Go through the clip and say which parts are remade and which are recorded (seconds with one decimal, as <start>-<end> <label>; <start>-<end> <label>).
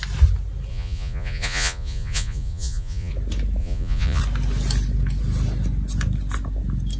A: 0.0-0.7 recorded; 0.7-3.1 remade; 3.1-3.6 recorded; 3.6-4.2 remade; 4.2-7.0 recorded